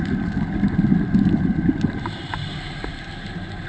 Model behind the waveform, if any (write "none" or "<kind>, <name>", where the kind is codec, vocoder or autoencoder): none